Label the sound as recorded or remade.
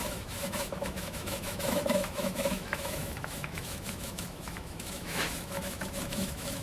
remade